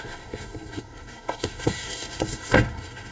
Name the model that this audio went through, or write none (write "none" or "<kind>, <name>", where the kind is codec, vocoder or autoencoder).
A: codec, SNAC